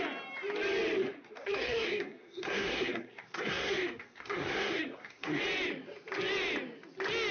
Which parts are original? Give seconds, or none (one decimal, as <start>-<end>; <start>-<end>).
0.0-1.0; 5.4-7.3